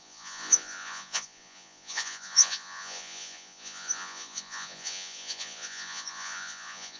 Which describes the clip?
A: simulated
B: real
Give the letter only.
A